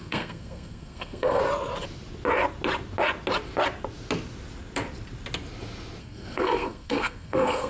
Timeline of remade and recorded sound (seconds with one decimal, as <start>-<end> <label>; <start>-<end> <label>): 0.0-1.4 remade; 1.4-6.0 recorded; 6.0-7.7 remade